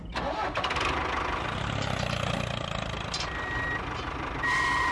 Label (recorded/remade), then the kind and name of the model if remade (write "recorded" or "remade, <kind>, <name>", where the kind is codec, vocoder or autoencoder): recorded